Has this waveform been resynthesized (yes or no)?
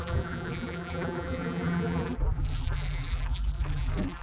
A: yes